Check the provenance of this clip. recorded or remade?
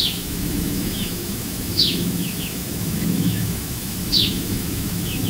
remade